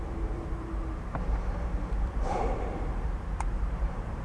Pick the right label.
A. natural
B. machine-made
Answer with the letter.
B